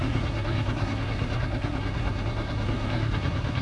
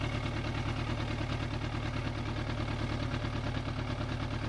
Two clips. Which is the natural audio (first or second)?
second